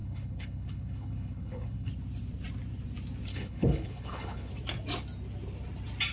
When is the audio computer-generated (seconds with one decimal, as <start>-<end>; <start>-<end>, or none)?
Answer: 0.0-1.9; 3.3-4.5